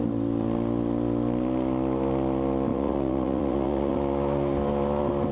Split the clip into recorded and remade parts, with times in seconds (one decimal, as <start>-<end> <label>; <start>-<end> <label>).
0.0-2.7 recorded; 2.7-3.9 remade; 3.9-5.3 recorded